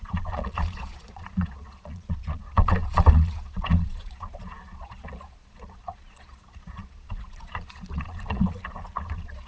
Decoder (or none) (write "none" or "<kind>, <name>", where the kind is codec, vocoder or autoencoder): vocoder, Vocos